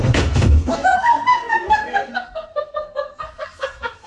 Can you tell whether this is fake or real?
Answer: fake